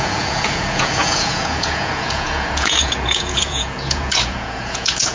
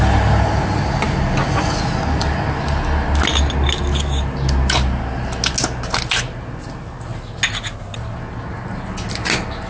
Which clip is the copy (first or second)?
first